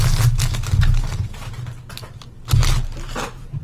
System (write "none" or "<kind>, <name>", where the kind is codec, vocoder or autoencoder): none